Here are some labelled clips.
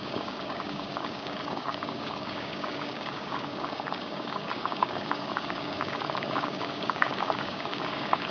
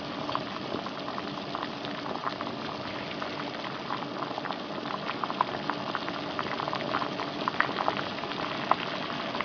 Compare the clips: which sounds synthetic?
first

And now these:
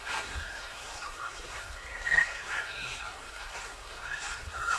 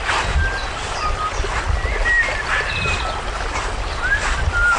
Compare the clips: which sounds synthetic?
first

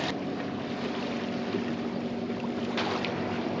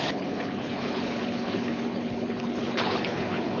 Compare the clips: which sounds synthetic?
second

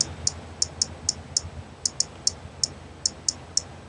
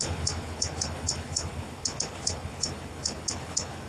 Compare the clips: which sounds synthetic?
second